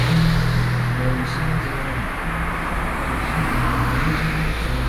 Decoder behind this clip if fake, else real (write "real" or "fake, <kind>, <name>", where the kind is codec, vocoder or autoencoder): real